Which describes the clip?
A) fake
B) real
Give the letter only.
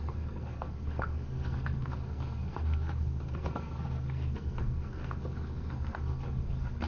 A